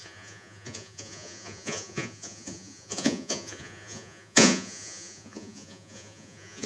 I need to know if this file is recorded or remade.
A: remade